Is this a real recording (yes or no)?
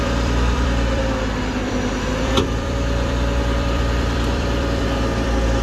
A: no